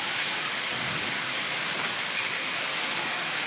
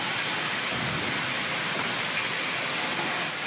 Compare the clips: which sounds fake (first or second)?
first